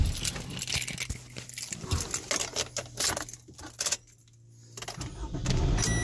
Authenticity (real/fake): real